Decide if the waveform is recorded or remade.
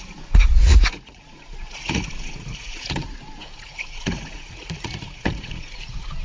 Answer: remade